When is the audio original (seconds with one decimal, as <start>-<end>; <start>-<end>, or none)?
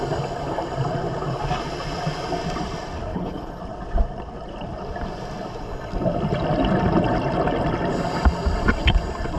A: 0.0-3.1; 3.6-9.4